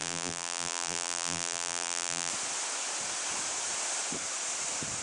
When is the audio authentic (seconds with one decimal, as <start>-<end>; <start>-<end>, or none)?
2.3-5.0